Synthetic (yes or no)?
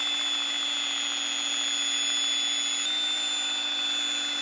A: no